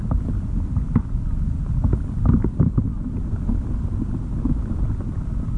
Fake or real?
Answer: real